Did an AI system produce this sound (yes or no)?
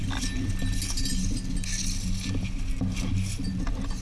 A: no